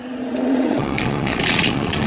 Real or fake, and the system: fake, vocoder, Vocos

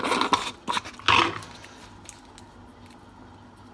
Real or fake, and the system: real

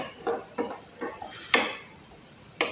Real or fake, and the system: real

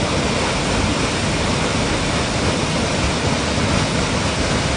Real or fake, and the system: real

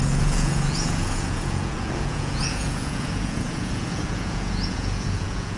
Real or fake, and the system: fake, vocoder, Vocos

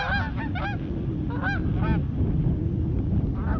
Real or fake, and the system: real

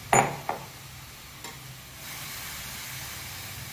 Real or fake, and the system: real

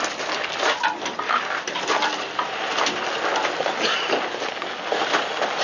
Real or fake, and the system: real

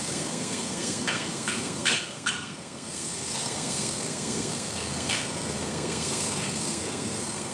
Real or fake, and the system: fake, codec, SNAC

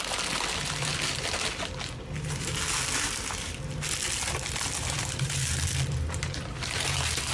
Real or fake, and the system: real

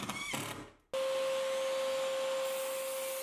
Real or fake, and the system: real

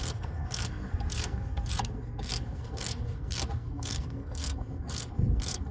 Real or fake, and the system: fake, codec, SNAC